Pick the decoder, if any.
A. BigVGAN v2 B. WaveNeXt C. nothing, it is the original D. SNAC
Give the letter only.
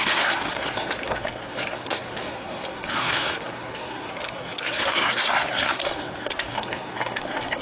D